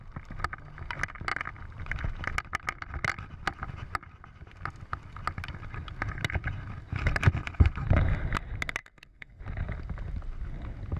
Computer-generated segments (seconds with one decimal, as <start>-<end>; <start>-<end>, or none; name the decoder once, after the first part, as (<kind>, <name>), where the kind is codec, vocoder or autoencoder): 8.8-9.4 (codec, SNAC)

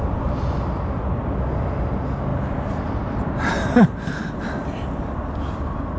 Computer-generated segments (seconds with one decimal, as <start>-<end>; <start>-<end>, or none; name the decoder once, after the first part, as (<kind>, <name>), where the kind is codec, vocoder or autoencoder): 2.3-4.4 (vocoder, BigVGAN v2)

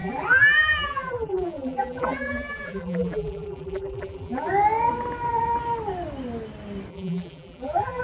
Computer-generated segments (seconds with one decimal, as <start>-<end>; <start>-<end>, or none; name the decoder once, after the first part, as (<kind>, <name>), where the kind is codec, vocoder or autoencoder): 0.0-4.5 (vocoder, BigVGAN v2); 6.9-8.0

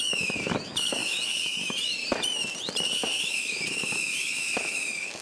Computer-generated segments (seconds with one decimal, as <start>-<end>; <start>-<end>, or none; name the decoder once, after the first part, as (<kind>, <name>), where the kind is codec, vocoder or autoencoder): 0.0-2.0 (autoencoder, DAC-VAE); 2.8-5.2

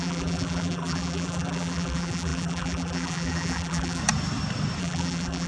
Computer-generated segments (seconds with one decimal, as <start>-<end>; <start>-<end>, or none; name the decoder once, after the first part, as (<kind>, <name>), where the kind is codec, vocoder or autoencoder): 0.0-4.0 (vocoder, BigVGAN v2); 4.8-5.5

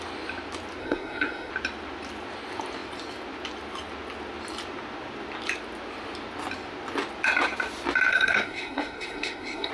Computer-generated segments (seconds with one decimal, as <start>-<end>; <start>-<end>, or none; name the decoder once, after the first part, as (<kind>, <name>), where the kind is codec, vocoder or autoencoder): 0.8-1.5 (codec, SNAC); 8.1-9.7

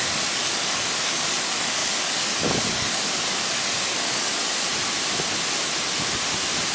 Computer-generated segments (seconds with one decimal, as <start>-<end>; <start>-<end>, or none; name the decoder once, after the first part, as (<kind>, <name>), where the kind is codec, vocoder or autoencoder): 0.0-4.7 (codec, DAC)